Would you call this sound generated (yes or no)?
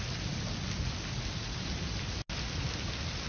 no